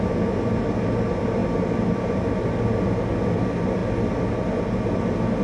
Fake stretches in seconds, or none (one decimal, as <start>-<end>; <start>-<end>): none